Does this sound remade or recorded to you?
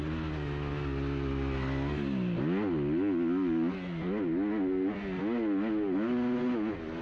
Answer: recorded